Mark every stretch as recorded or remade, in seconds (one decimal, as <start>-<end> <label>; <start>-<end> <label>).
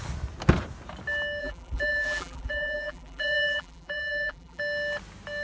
0.0-1.4 recorded; 1.4-4.6 remade; 4.6-5.4 recorded